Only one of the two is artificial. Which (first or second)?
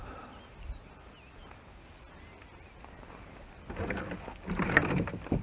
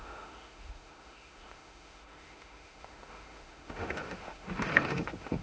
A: second